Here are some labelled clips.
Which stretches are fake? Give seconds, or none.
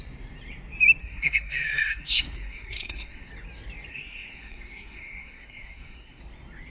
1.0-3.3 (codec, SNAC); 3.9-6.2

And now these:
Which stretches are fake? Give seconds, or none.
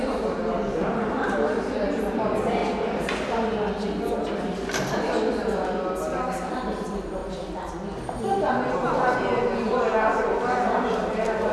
none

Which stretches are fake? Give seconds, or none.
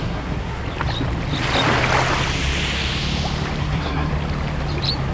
0.0-0.6 (codec, SNAC); 3.6-4.1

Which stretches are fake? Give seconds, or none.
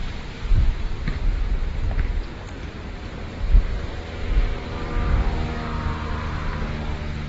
0.0-3.6 (vocoder, BigVGAN v2)